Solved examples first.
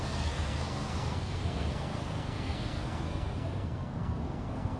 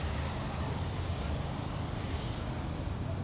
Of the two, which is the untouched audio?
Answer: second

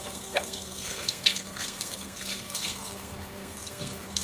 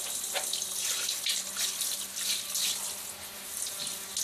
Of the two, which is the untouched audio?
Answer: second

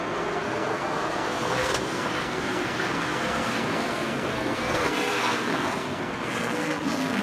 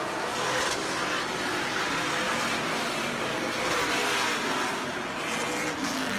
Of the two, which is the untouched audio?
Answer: second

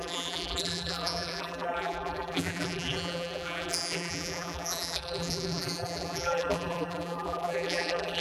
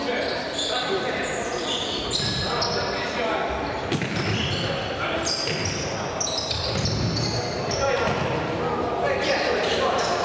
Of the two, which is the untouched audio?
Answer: second